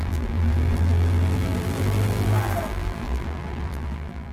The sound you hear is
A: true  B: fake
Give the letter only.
B